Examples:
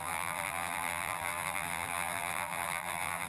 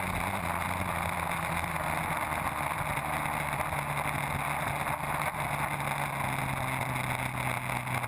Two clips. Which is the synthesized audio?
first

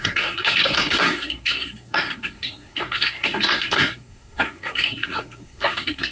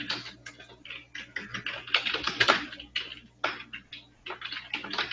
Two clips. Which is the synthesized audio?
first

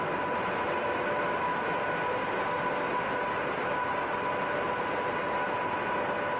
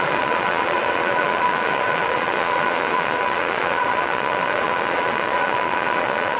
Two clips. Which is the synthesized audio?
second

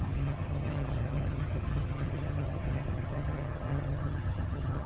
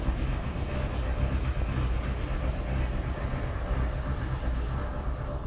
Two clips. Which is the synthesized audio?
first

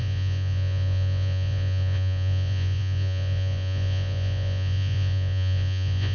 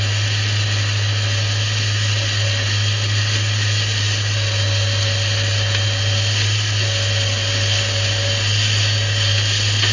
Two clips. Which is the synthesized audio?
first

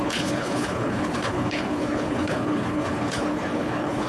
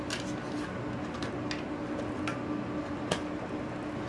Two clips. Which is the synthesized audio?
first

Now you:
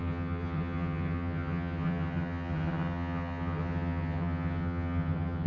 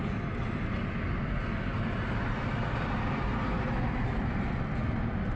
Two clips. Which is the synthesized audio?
first